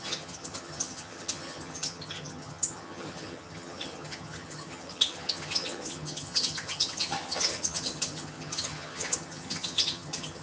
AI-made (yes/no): yes